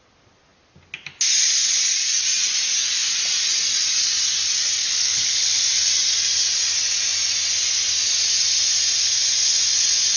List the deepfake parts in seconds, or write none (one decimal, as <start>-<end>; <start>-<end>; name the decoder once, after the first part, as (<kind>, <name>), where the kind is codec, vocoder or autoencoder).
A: 4.8-5.6 (codec, HILCodec)